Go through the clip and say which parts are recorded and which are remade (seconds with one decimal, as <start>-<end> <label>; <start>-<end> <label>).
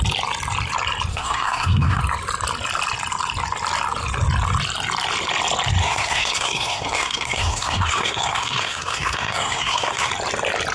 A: 0.0-1.1 recorded; 1.1-2.0 remade; 2.0-5.8 recorded; 5.8-10.1 remade; 10.1-10.7 recorded